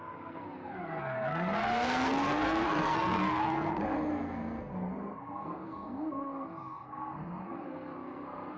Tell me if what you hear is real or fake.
fake